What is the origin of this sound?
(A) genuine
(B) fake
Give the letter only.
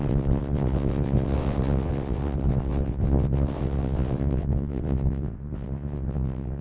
B